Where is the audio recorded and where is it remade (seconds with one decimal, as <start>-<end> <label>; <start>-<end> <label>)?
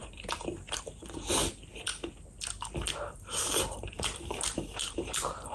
0.0-1.4 remade; 1.4-3.1 recorded; 3.1-5.5 remade